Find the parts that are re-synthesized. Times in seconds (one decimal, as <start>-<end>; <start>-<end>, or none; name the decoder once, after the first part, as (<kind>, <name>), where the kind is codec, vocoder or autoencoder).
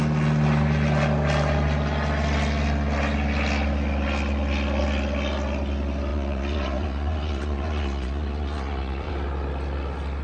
6.1-9.1 (vocoder, Vocos)